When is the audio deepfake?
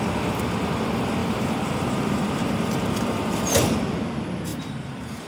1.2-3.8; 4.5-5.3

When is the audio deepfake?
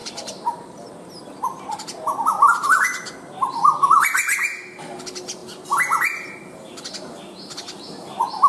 0.0-1.2; 2.6-3.1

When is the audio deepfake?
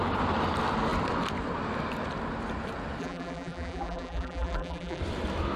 3.0-5.0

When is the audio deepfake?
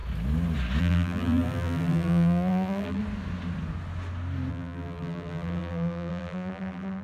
0.8-3.0; 4.5-7.0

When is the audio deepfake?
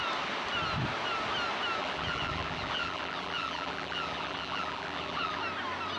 1.8-5.4